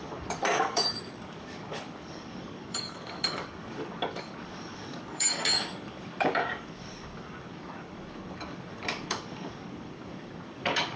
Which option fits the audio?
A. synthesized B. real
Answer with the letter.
A